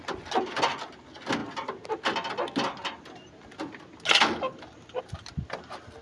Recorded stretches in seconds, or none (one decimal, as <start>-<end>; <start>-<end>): 0.0-6.0